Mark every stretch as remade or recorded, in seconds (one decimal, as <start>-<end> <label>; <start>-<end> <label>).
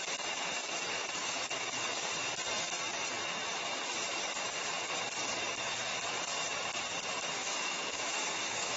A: 0.0-7.4 recorded; 7.4-8.8 remade